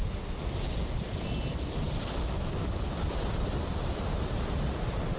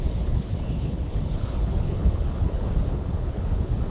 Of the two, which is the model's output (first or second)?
second